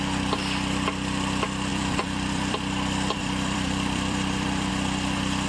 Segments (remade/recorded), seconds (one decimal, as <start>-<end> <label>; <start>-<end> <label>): 0.0-1.7 recorded; 1.7-4.7 remade; 4.7-5.5 recorded